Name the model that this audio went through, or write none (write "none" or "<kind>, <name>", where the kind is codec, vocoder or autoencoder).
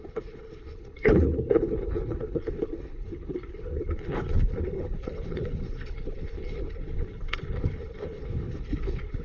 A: codec, HILCodec